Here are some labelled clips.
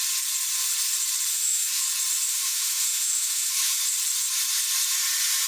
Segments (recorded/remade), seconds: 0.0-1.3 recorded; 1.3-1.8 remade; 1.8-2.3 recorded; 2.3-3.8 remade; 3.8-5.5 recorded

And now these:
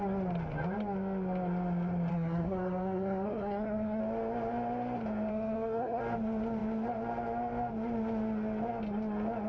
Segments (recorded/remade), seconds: 0.0-2.1 recorded; 2.1-4.0 remade; 4.0-5.3 recorded; 5.3-6.0 remade; 6.0-9.5 recorded

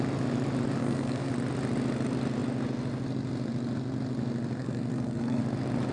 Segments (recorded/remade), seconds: 0.0-0.8 recorded; 0.8-1.3 remade; 1.3-4.6 recorded; 4.6-5.4 remade; 5.4-5.9 recorded